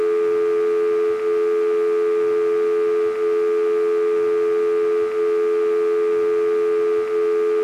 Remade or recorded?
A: recorded